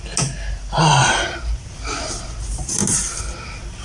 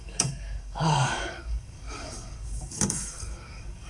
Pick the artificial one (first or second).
second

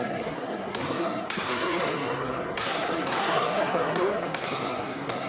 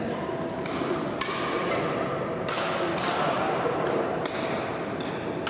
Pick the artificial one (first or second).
first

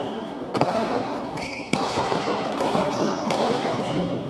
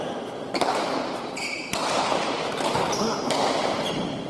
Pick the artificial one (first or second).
first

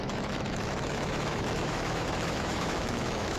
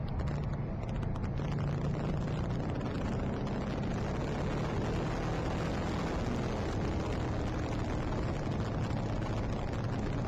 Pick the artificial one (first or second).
first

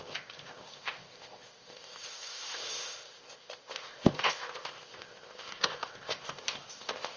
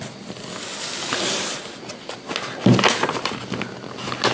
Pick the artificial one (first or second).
first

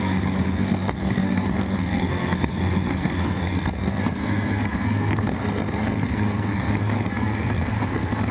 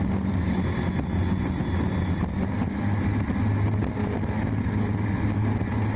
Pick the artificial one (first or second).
first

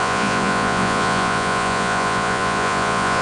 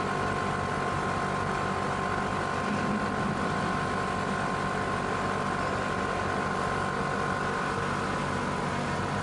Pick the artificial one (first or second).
first